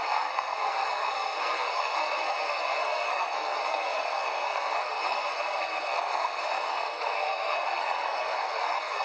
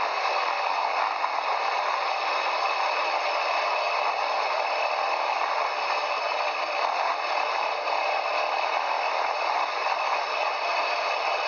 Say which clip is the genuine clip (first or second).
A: second